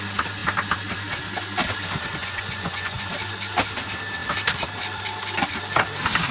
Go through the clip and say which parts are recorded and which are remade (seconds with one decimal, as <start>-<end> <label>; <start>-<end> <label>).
0.0-2.2 recorded; 2.2-3.1 remade; 3.1-6.3 recorded